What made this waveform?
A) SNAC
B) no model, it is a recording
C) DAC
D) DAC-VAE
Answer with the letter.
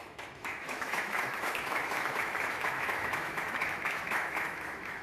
D